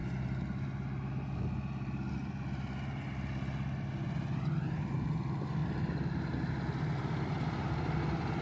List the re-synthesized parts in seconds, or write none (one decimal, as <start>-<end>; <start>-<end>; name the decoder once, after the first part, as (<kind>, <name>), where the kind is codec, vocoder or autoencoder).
none